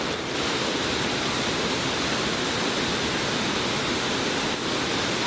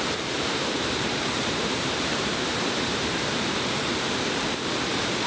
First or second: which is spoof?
second